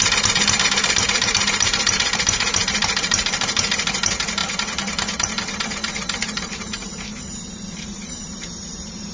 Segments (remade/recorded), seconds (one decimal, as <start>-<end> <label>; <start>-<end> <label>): 0.0-9.1 remade